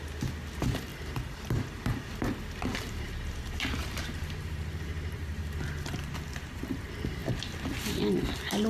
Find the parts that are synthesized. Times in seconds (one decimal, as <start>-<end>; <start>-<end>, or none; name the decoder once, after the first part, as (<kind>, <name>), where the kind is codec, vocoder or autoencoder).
0.9-2.0 (vocoder, BigVGAN v2); 2.7-5.9